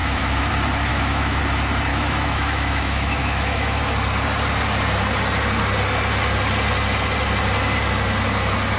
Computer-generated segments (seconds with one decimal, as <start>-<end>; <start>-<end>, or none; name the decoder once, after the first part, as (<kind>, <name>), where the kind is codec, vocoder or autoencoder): 0.0-0.5 (autoencoder, DAC-VAE); 0.9-1.4; 1.9-3.8